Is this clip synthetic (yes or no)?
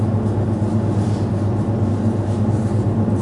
no